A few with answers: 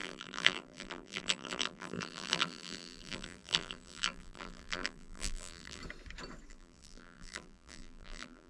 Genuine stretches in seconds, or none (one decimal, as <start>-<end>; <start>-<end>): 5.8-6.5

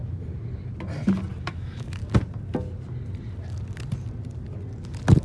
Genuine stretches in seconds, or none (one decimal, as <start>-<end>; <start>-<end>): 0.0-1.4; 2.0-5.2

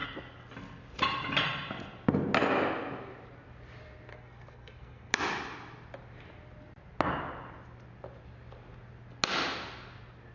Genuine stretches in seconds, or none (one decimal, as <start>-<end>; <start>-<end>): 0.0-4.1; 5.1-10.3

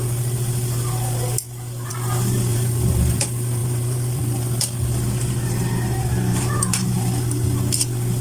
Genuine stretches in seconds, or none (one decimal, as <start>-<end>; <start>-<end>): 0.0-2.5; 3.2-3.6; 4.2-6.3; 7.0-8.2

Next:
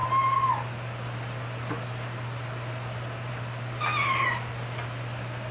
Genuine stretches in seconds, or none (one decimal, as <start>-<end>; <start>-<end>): 0.0-5.5